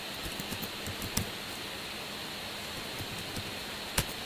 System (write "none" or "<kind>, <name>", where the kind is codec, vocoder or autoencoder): none